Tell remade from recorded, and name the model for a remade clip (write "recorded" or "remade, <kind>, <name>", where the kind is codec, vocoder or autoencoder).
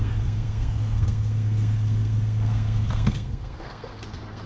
remade, codec, SNAC